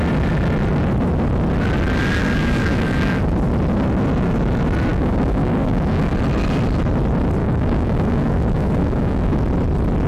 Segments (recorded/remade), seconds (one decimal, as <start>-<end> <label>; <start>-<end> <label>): 0.0-2.2 recorded; 2.2-3.2 remade; 3.2-4.9 recorded; 4.9-6.1 remade; 6.1-7.4 recorded; 7.4-9.4 remade; 9.4-10.1 recorded